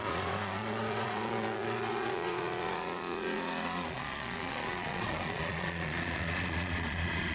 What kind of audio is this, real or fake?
fake